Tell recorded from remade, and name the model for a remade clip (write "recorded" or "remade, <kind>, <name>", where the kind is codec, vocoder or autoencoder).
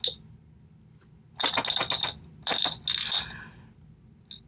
recorded